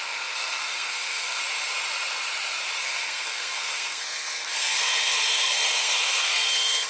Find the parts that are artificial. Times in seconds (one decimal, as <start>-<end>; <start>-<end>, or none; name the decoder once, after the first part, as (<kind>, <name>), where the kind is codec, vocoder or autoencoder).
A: 0.0-1.4 (codec, SNAC); 2.8-6.9